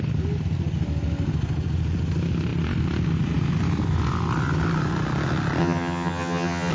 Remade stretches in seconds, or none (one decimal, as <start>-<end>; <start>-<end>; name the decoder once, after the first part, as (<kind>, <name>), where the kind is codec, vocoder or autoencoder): 5.6-6.7 (vocoder, HiFi-GAN)